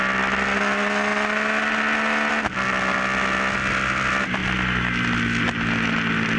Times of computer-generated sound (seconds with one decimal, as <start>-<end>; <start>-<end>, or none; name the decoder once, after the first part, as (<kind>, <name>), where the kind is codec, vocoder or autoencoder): none